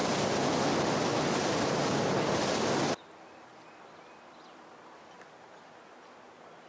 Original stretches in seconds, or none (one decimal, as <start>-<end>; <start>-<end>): 0.0-6.7